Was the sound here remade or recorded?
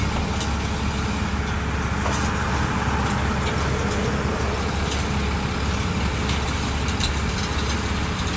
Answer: recorded